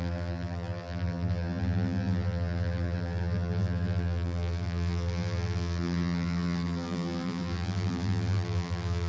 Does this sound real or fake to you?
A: fake